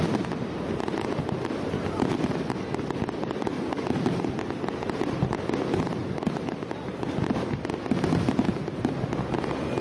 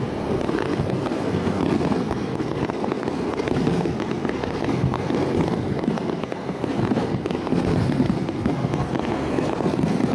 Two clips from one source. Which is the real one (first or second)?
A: first